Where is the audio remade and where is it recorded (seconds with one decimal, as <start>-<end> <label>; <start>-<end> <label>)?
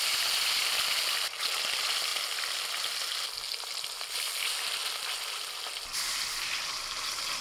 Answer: 0.0-2.1 remade; 2.1-3.8 recorded; 3.8-4.8 remade; 4.8-7.4 recorded